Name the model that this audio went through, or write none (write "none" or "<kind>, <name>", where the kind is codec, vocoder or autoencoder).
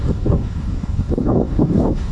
codec, DAC